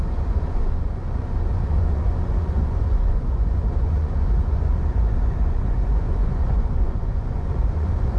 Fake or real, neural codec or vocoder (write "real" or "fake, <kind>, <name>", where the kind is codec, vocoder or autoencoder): fake, vocoder, Vocos